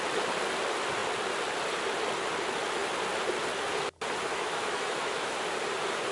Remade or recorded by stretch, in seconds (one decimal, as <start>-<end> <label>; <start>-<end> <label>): 0.0-4.3 recorded; 4.3-5.3 remade; 5.3-6.1 recorded